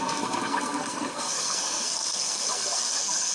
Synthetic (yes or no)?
yes